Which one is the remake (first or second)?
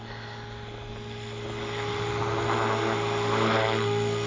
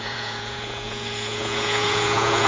second